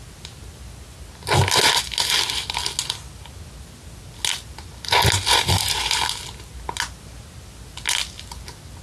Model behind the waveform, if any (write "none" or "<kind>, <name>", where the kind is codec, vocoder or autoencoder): none